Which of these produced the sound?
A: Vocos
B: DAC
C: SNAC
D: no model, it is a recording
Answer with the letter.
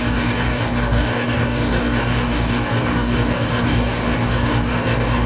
B